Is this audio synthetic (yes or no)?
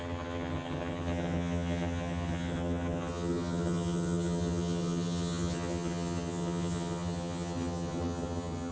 yes